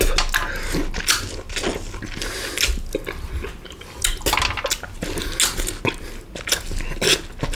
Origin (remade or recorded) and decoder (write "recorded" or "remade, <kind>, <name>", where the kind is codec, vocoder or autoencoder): recorded